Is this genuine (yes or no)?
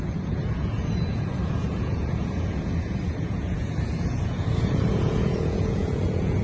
no